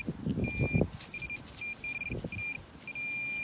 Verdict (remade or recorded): recorded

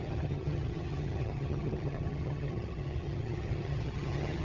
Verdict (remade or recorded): remade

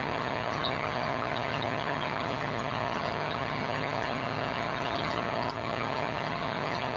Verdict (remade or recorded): remade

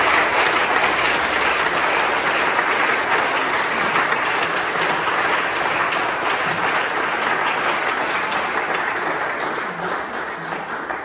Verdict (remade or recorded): recorded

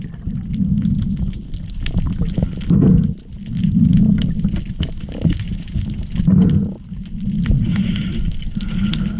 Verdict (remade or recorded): recorded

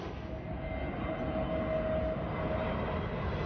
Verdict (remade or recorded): recorded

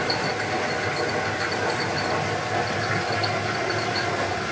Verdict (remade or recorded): recorded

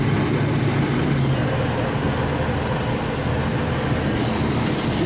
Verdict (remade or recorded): recorded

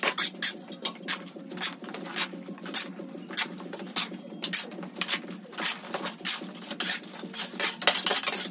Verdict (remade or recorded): recorded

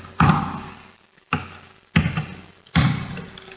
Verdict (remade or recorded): recorded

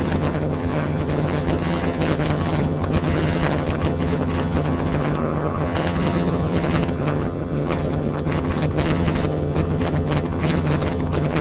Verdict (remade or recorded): remade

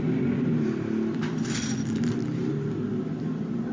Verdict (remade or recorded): recorded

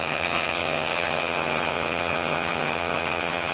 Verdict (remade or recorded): remade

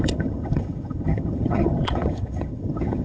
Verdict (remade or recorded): remade